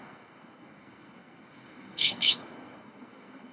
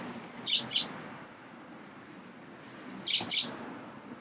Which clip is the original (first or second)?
second